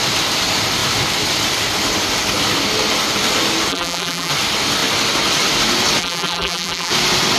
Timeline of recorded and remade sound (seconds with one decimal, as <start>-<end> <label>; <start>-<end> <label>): 0.0-3.7 recorded; 3.7-4.3 remade; 4.3-6.0 recorded; 6.0-6.9 remade; 6.9-7.4 recorded